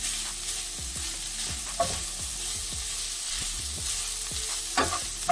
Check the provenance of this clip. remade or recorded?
recorded